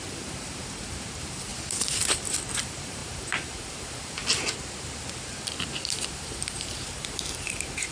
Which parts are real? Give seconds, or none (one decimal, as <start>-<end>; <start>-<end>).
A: 1.5-2.1; 4.2-6.1